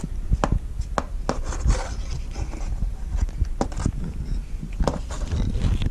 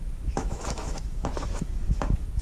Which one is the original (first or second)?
first